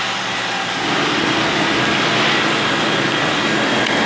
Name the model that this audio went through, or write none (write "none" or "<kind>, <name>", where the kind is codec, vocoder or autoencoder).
none